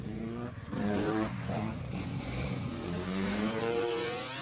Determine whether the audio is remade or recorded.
remade